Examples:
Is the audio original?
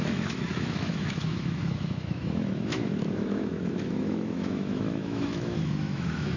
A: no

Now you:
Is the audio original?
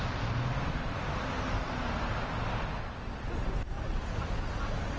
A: yes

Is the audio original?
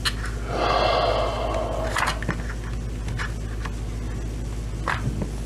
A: yes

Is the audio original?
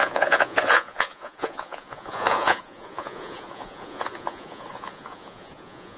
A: no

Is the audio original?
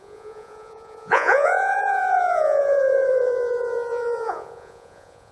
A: no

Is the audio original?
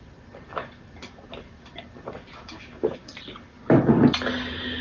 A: yes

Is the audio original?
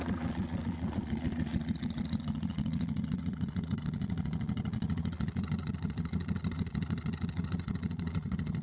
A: no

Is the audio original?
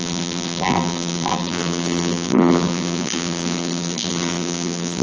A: no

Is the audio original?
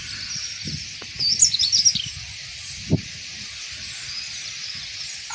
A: yes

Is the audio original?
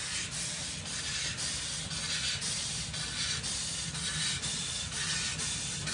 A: yes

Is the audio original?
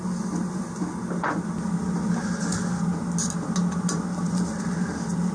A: yes